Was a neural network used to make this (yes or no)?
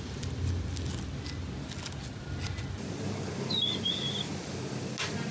no